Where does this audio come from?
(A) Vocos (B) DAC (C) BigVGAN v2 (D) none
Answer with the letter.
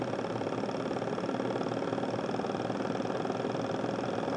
D